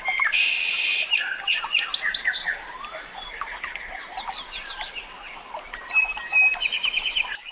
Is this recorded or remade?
recorded